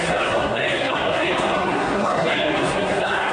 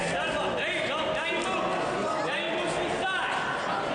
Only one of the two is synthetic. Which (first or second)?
first